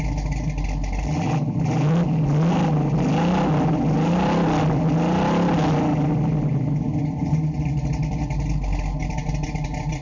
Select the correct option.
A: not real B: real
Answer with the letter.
B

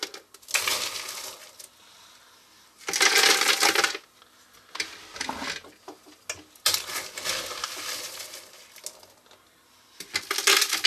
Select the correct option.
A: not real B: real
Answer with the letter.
B